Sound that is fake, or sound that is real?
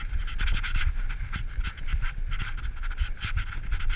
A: real